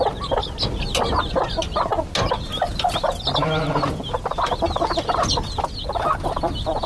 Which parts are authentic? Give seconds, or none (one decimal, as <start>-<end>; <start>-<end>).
0.0-6.9